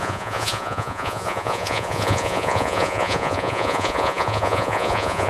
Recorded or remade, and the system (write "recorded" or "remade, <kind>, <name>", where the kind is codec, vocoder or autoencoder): remade, vocoder, Vocos